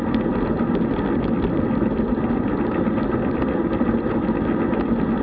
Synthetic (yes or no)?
no